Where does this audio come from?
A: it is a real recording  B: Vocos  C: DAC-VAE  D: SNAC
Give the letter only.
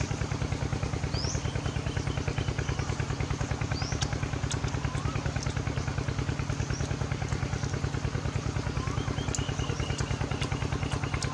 A